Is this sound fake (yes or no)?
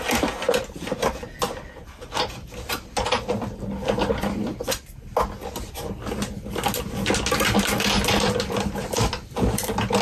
no